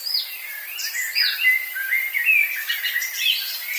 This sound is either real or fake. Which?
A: real